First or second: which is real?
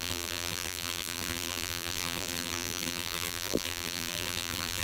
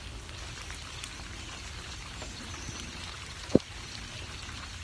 second